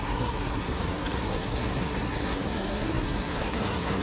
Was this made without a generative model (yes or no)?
no